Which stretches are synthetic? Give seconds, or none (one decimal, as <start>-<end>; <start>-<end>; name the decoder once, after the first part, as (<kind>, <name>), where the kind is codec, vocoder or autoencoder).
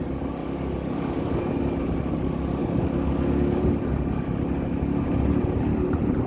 0.4-1.5 (codec, DAC); 2.6-3.6